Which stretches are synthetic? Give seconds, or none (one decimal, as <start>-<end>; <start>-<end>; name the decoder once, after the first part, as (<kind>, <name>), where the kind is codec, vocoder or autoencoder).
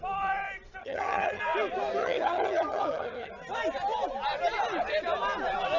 0.8-1.4 (vocoder, HiFi-GAN); 2.0-3.3